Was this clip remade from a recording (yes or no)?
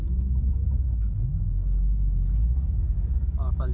yes